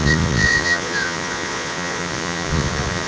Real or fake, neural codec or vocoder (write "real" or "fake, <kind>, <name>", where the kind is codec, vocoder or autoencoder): fake, vocoder, Vocos